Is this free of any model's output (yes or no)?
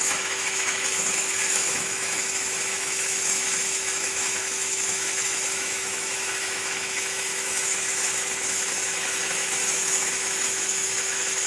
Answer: no